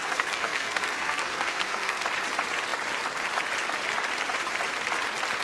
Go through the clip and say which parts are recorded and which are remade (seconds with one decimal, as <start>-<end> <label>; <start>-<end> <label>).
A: 0.0-2.0 remade; 2.0-5.4 recorded